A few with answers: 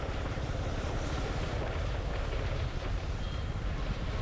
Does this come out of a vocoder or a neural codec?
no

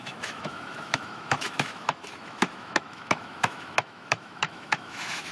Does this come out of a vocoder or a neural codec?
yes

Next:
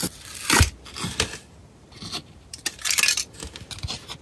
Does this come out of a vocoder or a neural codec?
no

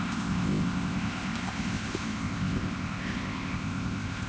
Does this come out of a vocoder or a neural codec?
yes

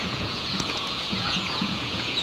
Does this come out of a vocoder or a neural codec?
yes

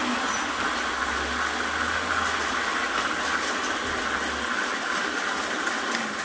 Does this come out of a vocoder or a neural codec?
no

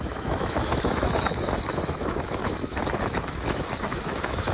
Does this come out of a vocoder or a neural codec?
yes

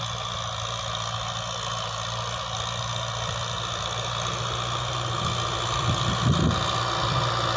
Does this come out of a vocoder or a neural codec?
no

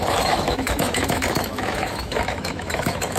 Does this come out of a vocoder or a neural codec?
yes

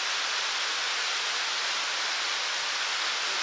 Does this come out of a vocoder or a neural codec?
no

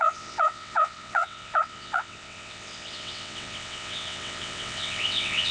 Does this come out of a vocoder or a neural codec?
yes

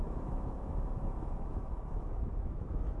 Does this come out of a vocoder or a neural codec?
yes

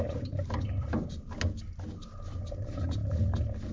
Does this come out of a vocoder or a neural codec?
no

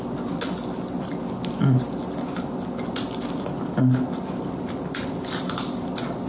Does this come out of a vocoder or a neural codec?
no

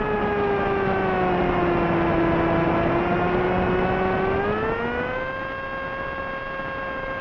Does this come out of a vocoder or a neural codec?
no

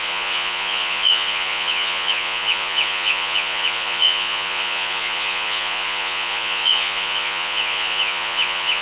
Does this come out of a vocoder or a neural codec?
yes